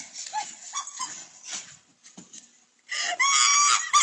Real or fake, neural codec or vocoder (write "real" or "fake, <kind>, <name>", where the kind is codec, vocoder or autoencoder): real